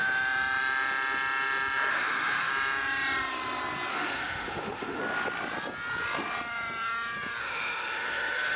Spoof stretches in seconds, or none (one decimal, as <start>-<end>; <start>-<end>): 1.9-2.5; 3.9-5.0; 7.4-8.6